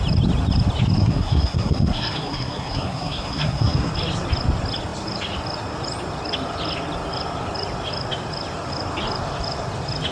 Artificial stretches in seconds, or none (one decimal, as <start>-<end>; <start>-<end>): 1.0-3.9